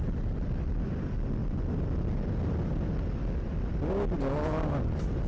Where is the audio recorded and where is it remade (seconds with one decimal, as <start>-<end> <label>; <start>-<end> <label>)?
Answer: 0.0-5.3 recorded